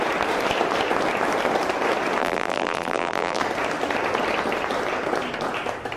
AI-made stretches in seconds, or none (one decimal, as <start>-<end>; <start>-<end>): 2.2-3.4